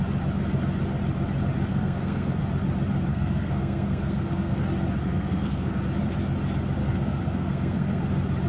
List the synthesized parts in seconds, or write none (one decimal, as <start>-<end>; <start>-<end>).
1.7-2.4; 3.1-4.6; 5.0-5.7; 6.8-8.0

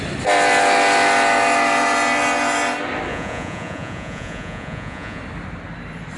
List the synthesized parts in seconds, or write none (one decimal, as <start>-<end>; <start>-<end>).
3.1-5.2

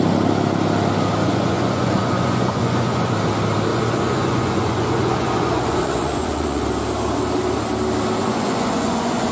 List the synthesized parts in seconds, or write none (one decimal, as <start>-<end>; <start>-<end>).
1.2-3.1; 3.7-6.6; 8.2-9.3

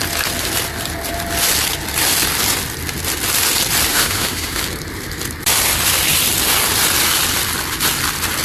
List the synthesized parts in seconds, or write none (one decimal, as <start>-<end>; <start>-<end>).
3.9-4.6

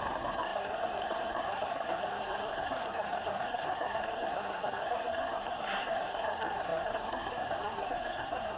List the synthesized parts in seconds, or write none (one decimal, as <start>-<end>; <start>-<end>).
0.0-8.6

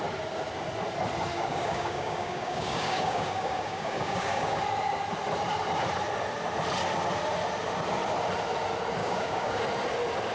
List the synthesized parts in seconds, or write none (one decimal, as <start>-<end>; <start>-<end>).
1.3-4.6; 9.0-9.6

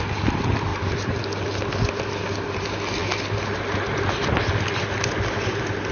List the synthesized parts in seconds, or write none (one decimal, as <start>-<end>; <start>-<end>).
none